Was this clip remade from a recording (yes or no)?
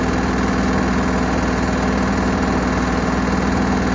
no